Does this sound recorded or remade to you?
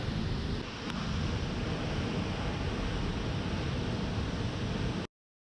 recorded